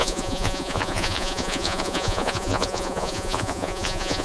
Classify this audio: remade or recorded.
remade